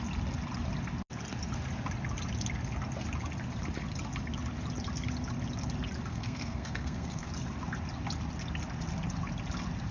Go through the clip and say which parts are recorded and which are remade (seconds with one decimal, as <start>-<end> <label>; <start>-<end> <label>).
0.0-6.1 recorded; 6.1-7.3 remade; 7.3-9.9 recorded